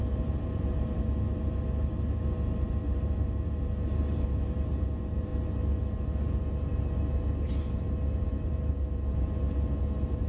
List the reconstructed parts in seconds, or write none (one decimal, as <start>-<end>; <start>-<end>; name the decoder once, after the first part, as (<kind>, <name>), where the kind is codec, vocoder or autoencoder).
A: 0.0-5.3 (vocoder, BigVGAN v2); 6.2-10.3